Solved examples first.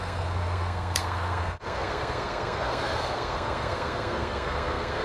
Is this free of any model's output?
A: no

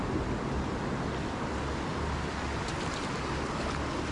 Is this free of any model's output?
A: yes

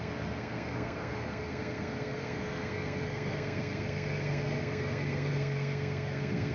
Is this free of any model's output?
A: no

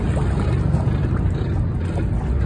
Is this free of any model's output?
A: yes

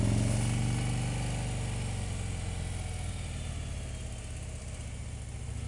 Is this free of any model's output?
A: yes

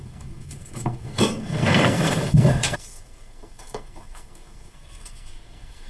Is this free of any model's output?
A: no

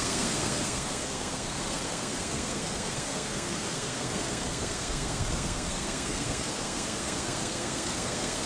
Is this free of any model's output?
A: no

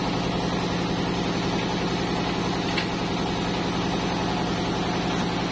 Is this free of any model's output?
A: yes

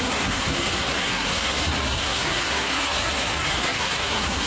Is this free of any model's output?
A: no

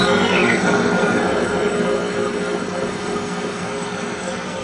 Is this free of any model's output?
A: no